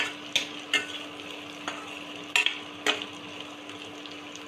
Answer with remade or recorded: recorded